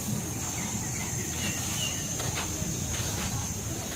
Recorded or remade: recorded